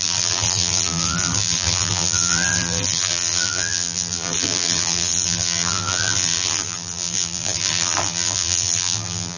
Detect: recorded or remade remade